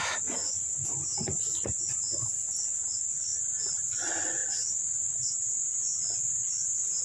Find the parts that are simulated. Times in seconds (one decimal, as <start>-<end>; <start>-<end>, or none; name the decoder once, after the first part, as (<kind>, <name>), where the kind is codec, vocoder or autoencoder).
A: none